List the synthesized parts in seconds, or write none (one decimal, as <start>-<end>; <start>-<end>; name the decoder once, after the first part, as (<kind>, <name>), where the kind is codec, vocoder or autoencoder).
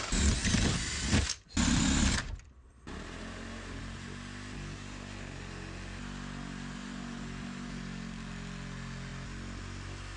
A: none